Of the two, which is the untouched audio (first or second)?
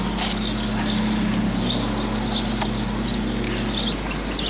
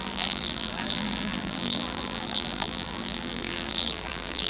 first